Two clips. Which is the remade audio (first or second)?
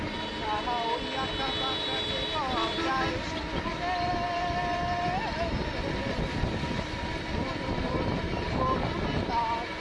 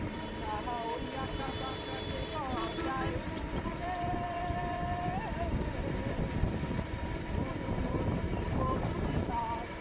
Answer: second